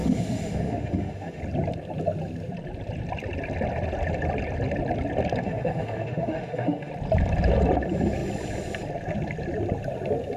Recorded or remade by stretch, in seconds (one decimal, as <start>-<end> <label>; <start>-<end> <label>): 0.0-1.4 remade; 1.4-5.4 recorded; 5.4-6.9 remade; 6.9-10.4 recorded